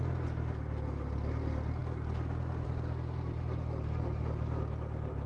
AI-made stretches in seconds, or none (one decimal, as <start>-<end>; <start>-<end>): none